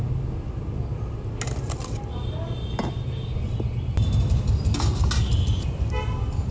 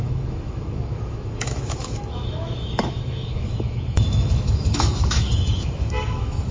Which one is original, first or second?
first